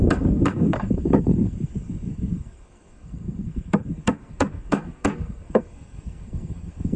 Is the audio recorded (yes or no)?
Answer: no